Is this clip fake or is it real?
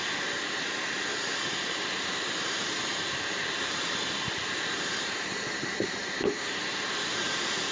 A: fake